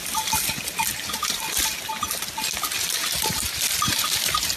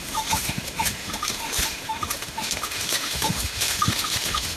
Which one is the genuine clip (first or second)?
first